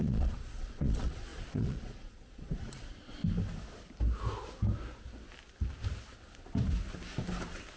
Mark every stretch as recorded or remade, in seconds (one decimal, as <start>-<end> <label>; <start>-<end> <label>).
0.0-3.2 remade; 3.2-7.8 recorded

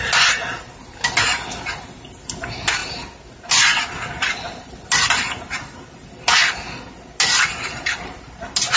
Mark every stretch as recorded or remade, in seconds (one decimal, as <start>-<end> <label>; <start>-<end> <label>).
0.0-8.8 recorded

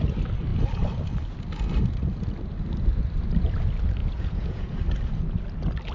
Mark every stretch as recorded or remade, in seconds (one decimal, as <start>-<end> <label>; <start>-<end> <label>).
0.0-4.0 recorded; 4.0-4.7 remade; 4.7-5.9 recorded

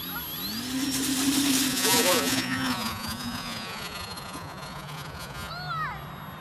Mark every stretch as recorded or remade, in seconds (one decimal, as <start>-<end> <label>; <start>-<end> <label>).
0.0-1.7 recorded; 1.7-5.5 remade; 5.5-6.4 recorded

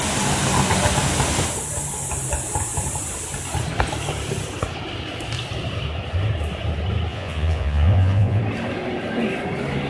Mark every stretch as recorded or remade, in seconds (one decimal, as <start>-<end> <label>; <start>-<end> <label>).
0.0-7.1 recorded; 7.1-8.4 remade; 8.4-9.9 recorded

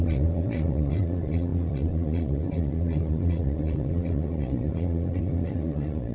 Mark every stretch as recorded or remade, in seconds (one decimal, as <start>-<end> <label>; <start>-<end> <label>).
0.0-6.1 remade